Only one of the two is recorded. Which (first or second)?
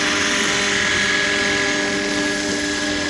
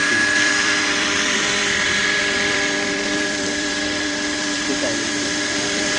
first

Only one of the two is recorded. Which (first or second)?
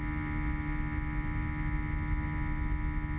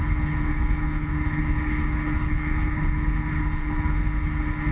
first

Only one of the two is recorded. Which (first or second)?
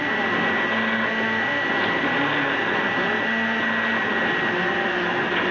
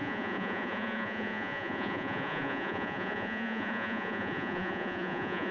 first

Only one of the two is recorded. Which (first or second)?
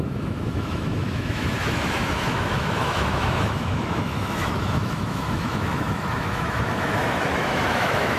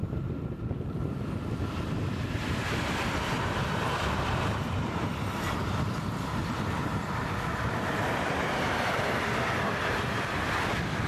second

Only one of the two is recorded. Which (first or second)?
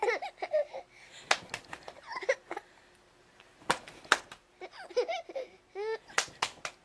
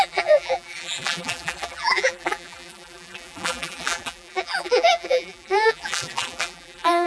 first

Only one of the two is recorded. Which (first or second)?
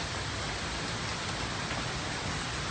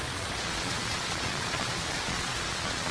first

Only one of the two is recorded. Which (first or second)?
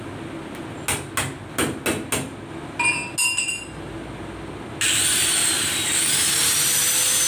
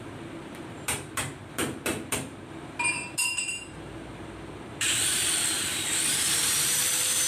first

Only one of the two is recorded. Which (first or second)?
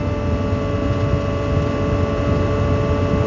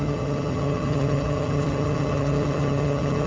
first